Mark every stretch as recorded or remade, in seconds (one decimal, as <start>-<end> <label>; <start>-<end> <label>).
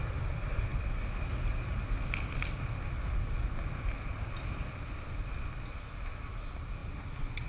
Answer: 0.0-7.5 recorded